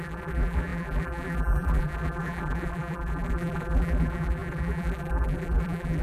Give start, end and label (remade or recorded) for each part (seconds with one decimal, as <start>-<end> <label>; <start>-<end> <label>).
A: 0.0-6.0 remade